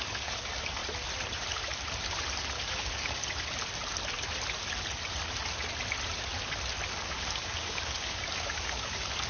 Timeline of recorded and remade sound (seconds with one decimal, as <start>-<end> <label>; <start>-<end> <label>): 0.0-0.8 remade; 0.8-2.5 recorded; 2.5-3.2 remade; 3.2-6.9 recorded; 6.9-9.3 remade